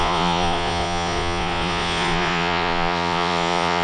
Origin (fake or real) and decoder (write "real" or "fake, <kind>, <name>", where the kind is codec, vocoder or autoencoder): fake, vocoder, Vocos